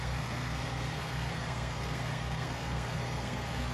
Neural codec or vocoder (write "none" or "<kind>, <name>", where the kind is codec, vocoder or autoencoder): codec, SNAC